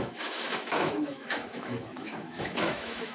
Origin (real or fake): fake